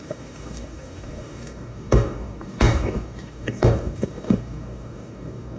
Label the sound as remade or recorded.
remade